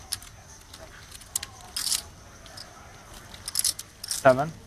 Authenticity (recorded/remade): recorded